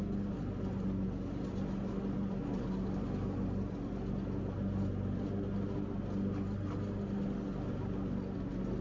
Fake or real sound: real